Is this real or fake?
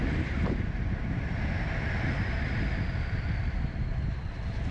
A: real